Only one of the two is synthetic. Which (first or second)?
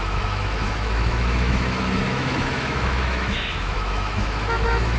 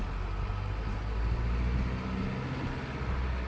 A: first